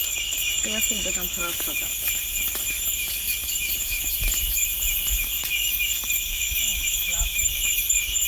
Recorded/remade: remade